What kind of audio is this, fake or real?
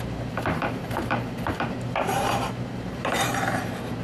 fake